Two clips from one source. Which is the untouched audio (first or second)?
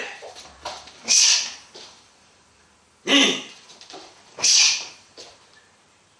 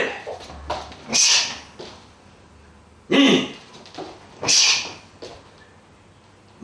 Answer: second